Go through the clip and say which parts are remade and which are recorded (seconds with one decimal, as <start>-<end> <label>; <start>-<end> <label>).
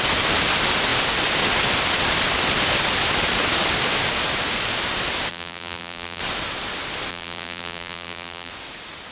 0.0-5.3 recorded; 5.3-6.2 remade; 6.2-7.1 recorded; 7.1-8.5 remade; 8.5-9.1 recorded